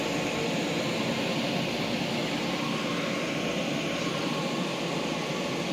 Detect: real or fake real